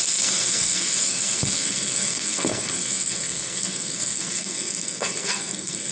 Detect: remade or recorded remade